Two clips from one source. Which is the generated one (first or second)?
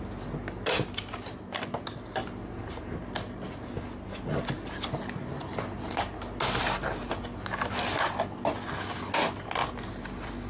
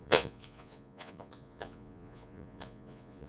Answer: second